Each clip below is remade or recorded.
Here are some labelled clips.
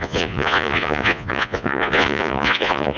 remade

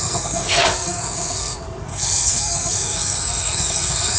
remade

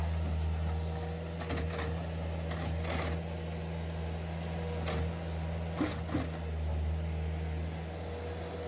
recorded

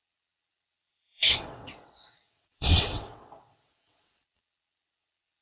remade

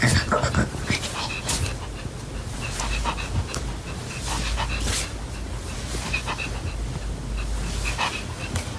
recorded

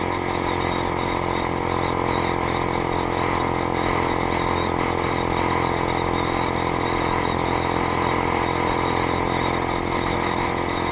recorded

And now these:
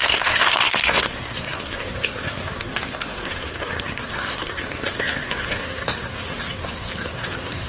remade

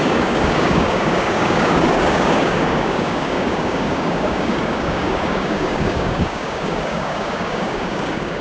remade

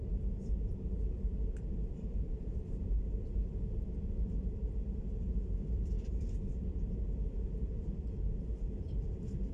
remade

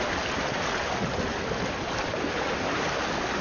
recorded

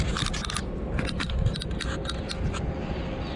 recorded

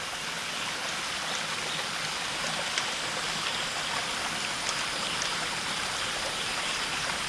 recorded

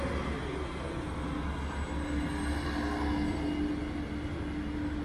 recorded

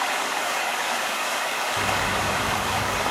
remade